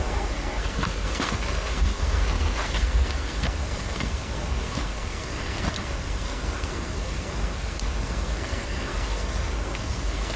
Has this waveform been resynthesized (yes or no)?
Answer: yes